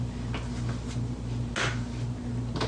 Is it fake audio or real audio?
real